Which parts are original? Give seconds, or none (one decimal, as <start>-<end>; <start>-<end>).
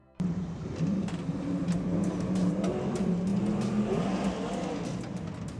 2.5-5.6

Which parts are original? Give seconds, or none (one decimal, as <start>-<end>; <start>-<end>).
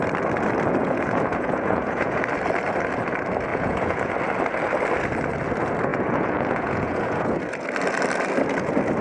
0.0-0.8; 2.2-3.5; 4.1-5.9; 7.4-9.0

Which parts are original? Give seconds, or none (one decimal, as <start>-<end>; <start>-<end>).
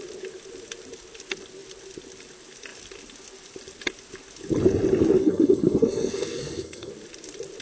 0.0-5.2; 6.9-7.6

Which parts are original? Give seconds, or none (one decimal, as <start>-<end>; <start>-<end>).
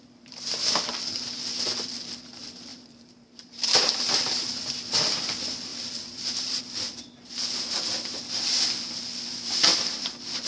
0.0-2.7; 4.6-5.7; 6.6-10.5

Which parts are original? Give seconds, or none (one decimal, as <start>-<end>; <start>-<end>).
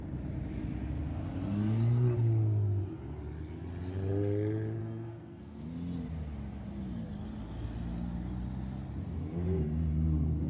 0.0-4.8; 5.7-10.5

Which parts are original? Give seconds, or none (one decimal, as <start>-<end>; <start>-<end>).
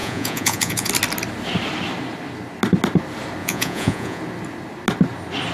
0.9-3.4; 4.2-5.5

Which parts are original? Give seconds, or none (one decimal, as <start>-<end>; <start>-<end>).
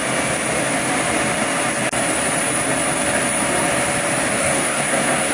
0.0-4.4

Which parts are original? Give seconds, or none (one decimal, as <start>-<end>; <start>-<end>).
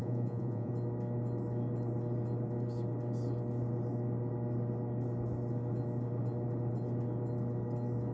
0.7-8.1